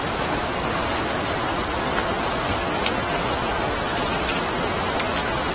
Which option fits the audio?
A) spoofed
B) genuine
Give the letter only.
B